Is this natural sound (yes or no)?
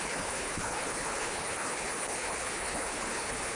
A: no